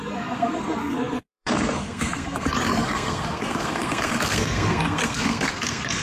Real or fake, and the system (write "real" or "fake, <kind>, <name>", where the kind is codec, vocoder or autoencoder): fake, codec, SNAC